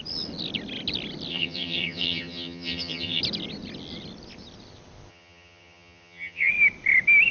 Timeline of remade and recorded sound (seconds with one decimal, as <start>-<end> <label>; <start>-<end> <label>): 0.0-1.3 recorded; 1.3-3.2 remade; 3.2-5.1 recorded; 5.1-6.5 remade; 6.5-7.3 recorded